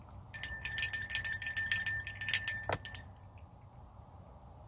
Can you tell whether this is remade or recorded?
recorded